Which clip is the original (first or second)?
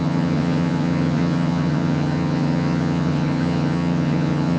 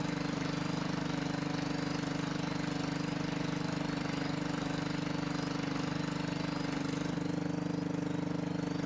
second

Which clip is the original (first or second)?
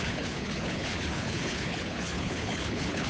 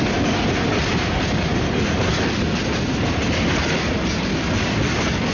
second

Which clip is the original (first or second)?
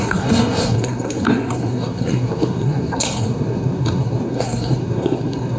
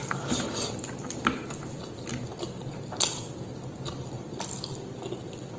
second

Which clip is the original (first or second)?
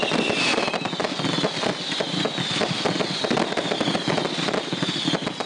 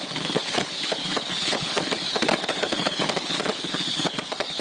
first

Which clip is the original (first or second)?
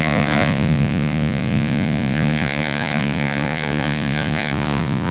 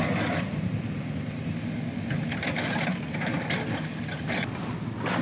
second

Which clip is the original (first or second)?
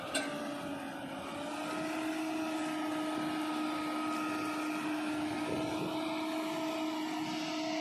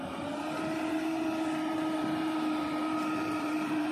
first